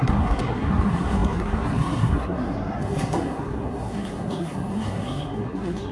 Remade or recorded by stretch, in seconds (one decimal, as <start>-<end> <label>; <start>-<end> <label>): 0.0-5.9 remade